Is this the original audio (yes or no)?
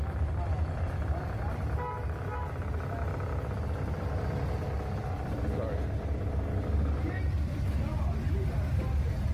yes